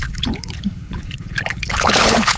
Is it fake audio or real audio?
fake